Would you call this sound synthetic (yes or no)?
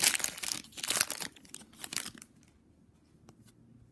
no